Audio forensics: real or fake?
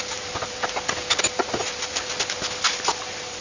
real